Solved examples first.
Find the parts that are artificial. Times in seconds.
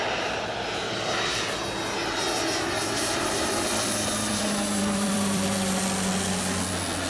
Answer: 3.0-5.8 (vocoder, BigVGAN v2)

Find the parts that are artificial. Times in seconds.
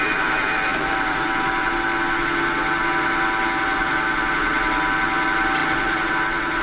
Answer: 0.7-1.7 (vocoder, BigVGAN v2); 5.6-6.1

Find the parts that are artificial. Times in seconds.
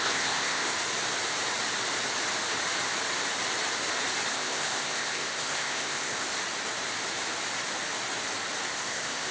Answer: 0.0-0.7 (codec, ZipCodec); 4.3-6.4; 8.7-9.3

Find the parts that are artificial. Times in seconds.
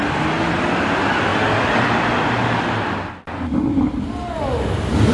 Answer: none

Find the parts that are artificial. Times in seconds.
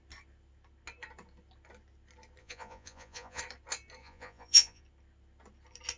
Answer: 2.4-3.4 (vocoder, Vocos); 4.0-4.8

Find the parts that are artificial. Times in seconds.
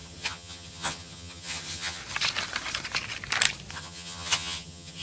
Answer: 0.0-2.0 (vocoder, HiFi-GAN); 3.7-5.0